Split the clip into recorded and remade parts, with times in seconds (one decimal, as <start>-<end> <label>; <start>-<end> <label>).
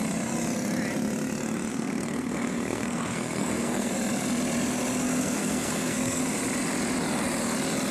0.0-1.7 recorded; 1.7-3.9 remade; 3.9-5.1 recorded; 5.1-6.2 remade; 6.2-7.9 recorded